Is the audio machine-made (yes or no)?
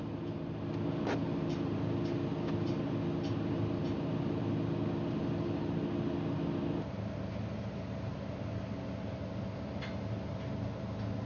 no